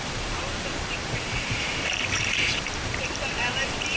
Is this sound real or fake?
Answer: fake